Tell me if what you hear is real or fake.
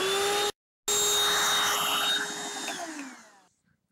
real